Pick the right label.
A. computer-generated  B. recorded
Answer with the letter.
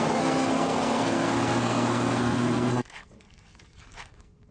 A